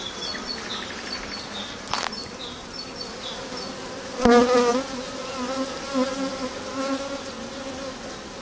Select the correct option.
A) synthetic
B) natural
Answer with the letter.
B